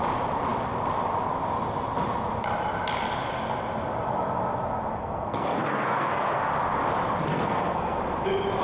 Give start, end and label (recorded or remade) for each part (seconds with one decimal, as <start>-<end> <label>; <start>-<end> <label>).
0.0-5.0 recorded; 5.0-6.5 remade; 6.5-7.3 recorded; 7.3-8.0 remade; 8.0-8.6 recorded